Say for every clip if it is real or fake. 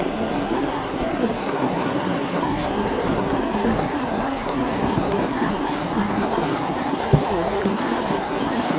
fake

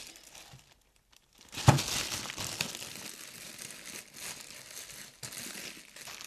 real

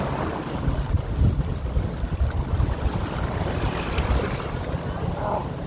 real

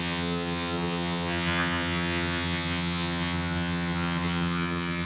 fake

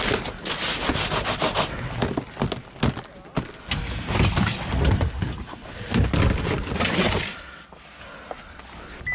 real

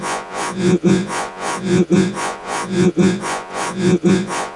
fake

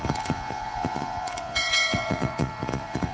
fake